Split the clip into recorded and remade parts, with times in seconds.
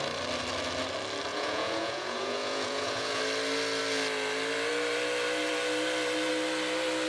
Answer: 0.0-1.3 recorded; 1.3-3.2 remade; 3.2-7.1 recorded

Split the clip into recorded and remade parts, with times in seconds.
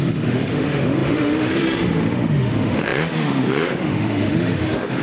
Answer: 0.0-5.0 remade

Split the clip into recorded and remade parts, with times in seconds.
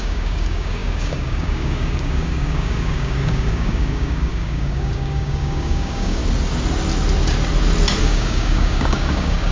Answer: 0.0-6.2 remade; 6.2-8.0 recorded; 8.0-9.5 remade